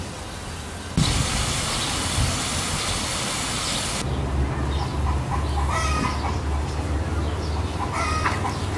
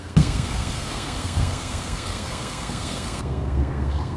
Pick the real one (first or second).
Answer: first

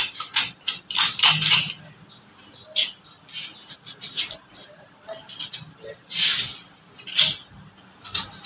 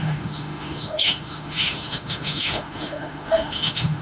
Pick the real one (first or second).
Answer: first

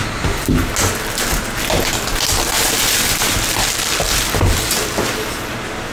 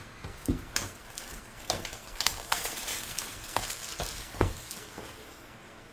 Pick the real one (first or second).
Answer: first